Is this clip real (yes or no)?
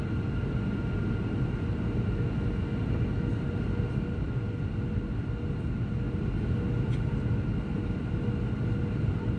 yes